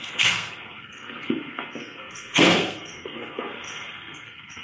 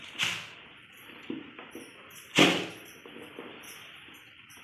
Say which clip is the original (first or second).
second